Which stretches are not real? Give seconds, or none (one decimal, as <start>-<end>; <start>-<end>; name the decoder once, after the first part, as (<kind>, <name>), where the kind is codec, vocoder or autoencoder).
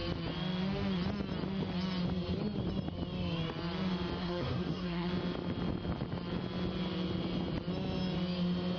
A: 4.2-5.1 (codec, SNAC)